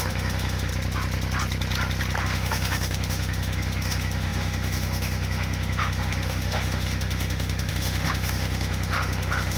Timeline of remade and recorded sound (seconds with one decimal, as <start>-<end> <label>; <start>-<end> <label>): 0.0-0.7 remade; 0.7-2.2 recorded; 2.2-9.6 remade